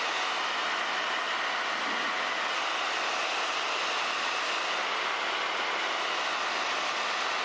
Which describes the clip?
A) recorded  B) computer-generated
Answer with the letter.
A